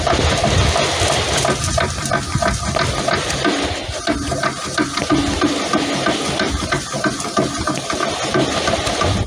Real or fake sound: real